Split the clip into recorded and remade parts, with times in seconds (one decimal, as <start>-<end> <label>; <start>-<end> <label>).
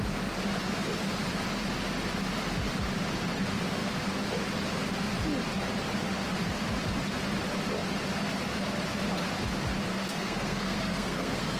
0.0-9.9 recorded; 9.9-11.6 remade